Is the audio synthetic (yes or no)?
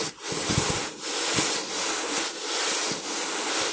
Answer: no